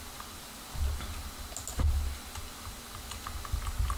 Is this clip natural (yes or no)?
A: yes